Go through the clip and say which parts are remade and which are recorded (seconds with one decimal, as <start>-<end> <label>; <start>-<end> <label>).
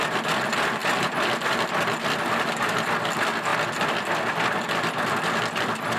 0.0-6.0 recorded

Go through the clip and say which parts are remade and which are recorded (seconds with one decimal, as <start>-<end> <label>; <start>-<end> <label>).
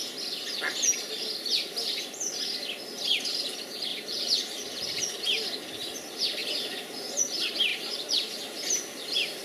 0.0-3.9 recorded; 3.9-5.0 remade; 5.0-6.4 recorded; 6.4-7.2 remade; 7.2-7.7 recorded; 7.7-8.4 remade; 8.4-9.4 recorded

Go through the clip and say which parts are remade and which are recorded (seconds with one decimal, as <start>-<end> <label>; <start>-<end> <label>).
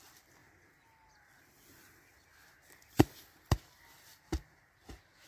0.0-5.3 recorded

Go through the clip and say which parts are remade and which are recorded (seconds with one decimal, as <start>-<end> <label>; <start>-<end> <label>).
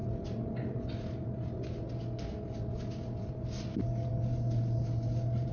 0.0-4.1 recorded; 4.1-5.5 remade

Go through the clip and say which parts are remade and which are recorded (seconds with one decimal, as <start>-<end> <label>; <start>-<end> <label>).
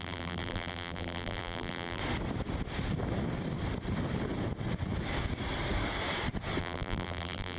0.0-2.0 remade; 2.0-6.6 recorded; 6.6-7.6 remade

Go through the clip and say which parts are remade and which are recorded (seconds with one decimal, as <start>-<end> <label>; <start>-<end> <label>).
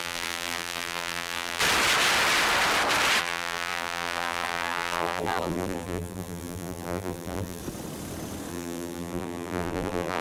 0.0-1.6 remade; 1.6-3.2 recorded; 3.2-7.6 remade; 7.6-8.5 recorded; 8.5-10.2 remade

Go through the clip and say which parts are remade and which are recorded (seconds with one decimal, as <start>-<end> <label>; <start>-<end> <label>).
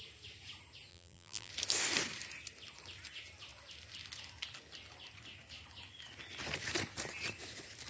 0.0-0.9 recorded; 0.9-1.5 remade; 1.5-7.9 recorded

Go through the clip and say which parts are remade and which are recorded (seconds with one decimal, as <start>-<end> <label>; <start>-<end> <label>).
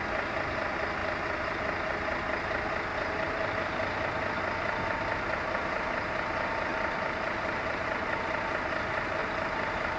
0.0-2.9 recorded; 2.9-3.5 remade; 3.5-6.7 recorded; 6.7-8.4 remade; 8.4-9.2 recorded; 9.2-10.0 remade